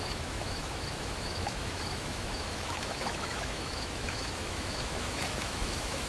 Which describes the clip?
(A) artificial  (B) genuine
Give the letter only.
A